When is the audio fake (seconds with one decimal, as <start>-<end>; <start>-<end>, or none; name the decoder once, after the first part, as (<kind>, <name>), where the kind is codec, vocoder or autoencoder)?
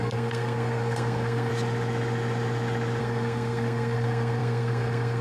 0.0-1.5 (codec, SNAC); 3.0-5.2